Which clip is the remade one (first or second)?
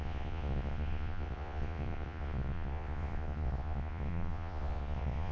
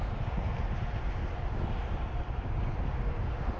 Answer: first